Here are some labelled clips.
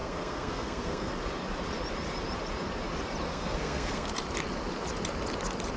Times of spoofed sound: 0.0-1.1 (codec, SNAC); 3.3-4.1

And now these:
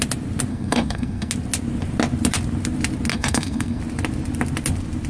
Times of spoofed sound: 0.5-1.3 (codec, SNAC); 3.1-3.8